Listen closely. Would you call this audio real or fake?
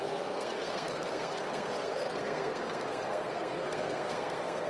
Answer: fake